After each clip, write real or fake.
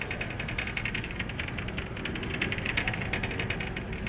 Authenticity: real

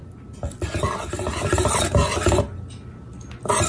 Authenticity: real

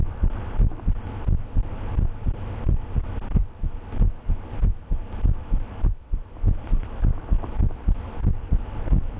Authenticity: real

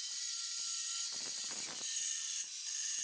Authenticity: fake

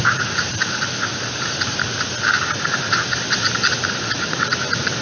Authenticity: real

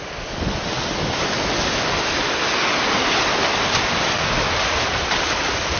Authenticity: real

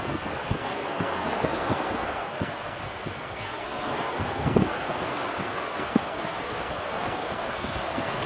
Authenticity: fake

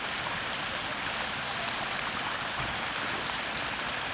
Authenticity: real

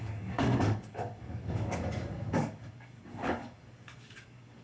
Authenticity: fake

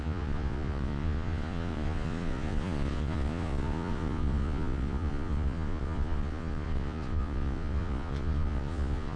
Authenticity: fake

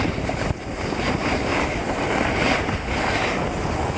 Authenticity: real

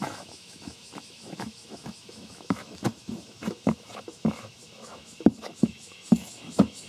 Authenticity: fake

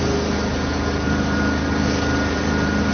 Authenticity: real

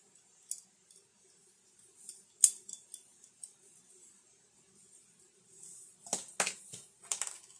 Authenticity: real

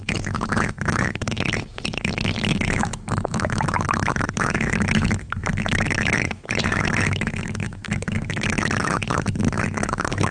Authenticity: fake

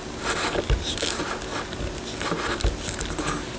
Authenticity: real